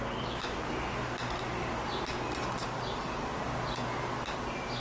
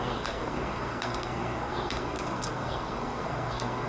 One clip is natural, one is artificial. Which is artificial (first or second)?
second